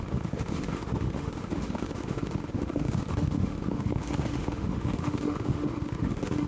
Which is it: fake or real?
fake